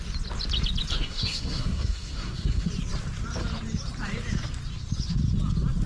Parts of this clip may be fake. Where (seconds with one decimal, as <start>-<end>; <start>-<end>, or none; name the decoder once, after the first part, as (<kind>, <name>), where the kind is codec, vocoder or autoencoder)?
0.9-2.7 (codec, SNAC)